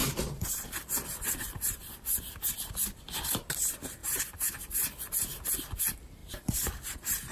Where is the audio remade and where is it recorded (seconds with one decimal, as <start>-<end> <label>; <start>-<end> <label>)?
0.0-2.3 remade; 2.3-4.0 recorded; 4.0-4.5 remade; 4.5-7.3 recorded